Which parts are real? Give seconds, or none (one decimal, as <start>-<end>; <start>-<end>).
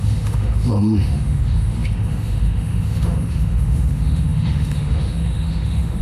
none